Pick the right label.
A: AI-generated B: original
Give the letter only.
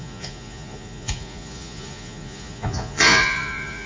A